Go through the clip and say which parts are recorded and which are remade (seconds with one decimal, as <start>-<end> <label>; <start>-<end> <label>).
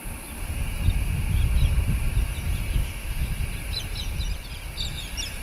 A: 0.0-2.8 recorded; 2.8-3.4 remade; 3.4-5.4 recorded